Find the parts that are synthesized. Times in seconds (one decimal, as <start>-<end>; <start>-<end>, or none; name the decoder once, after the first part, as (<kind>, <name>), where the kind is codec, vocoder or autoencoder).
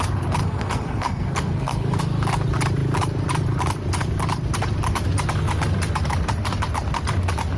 0.4-2.0 (codec, SNAC)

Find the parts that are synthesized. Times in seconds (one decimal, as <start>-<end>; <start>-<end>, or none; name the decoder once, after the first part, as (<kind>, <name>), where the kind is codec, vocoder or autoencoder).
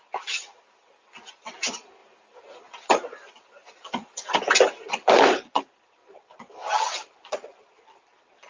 none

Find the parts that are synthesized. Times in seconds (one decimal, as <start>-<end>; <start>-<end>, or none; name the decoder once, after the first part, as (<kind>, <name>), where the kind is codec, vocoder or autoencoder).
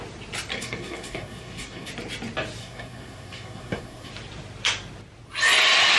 0.5-1.9 (codec, SNAC); 2.6-4.1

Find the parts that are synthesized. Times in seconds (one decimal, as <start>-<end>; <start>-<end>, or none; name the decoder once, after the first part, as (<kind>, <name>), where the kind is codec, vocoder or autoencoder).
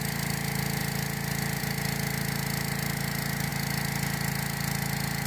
none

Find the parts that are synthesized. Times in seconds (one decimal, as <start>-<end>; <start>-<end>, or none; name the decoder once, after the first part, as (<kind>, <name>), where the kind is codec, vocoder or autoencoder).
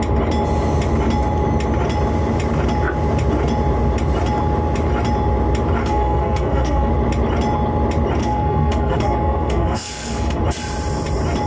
5.8-6.9 (codec, SNAC); 8.2-10.4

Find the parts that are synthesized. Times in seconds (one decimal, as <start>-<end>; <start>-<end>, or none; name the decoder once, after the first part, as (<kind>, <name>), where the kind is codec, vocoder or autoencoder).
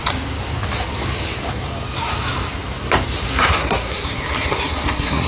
3.4-5.3 (codec, SNAC)